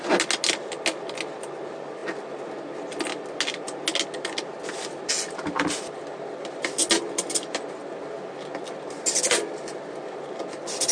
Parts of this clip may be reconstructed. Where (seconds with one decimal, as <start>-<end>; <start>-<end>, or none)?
none